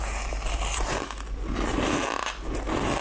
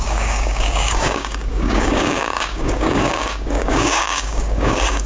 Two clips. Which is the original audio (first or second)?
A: first